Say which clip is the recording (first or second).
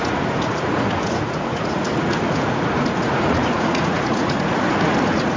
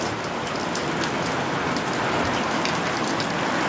second